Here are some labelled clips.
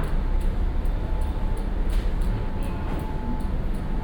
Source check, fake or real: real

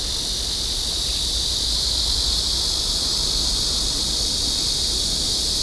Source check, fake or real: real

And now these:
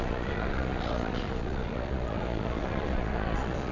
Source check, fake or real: fake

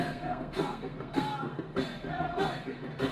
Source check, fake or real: fake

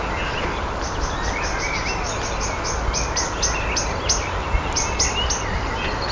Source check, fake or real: real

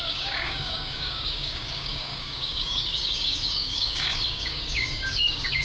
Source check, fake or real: fake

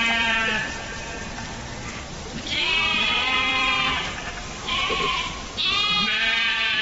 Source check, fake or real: fake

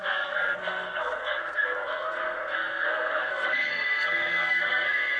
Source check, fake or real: fake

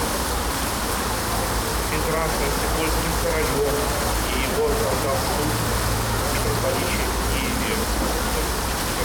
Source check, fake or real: real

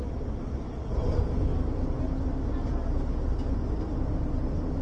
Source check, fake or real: real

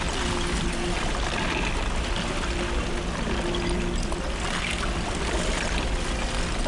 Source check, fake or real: real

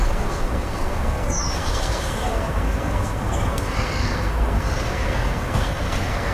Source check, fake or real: fake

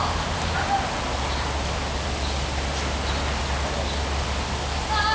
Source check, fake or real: real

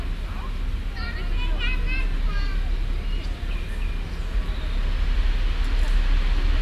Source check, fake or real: real